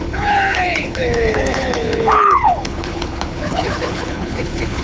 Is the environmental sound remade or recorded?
remade